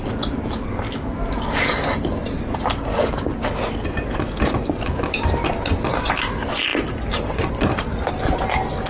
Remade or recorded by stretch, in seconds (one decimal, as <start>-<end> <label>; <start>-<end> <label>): 0.0-3.2 remade; 3.2-8.9 recorded